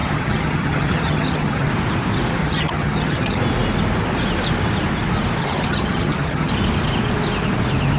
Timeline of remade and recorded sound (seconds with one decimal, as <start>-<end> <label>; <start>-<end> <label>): 0.0-1.7 remade; 1.7-2.4 recorded; 2.4-3.4 remade; 3.4-5.4 recorded; 5.4-6.5 remade; 6.5-8.0 recorded